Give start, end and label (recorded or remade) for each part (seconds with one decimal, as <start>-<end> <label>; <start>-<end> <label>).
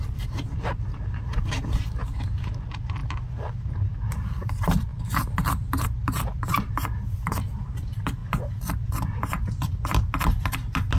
0.0-3.0 remade; 3.0-3.8 recorded; 3.8-8.2 remade; 8.2-11.0 recorded